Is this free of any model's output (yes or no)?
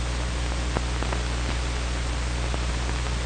yes